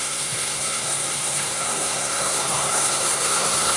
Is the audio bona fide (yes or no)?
no